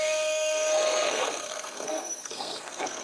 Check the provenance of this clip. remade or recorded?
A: remade